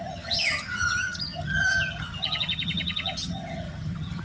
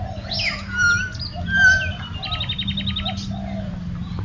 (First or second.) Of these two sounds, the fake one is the first